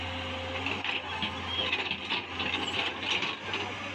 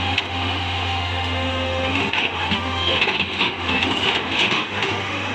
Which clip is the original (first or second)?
first